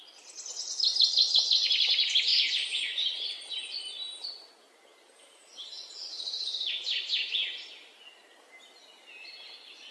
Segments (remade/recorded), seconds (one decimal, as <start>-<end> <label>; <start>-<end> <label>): 0.0-2.3 recorded; 2.3-4.5 remade; 4.5-4.9 recorded; 4.9-7.7 remade; 7.7-9.9 recorded